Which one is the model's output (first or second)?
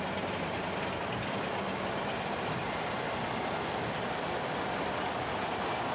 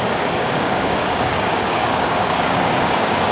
second